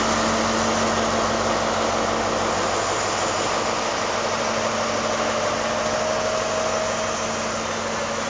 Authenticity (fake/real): real